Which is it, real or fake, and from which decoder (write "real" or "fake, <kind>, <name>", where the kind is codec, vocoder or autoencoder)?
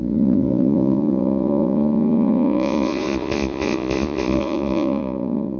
fake, vocoder, Vocos